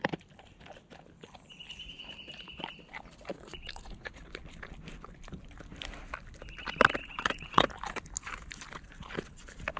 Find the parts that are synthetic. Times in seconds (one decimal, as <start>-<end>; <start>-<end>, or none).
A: 3.3-4.2; 7.0-7.7